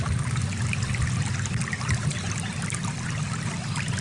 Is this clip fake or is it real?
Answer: real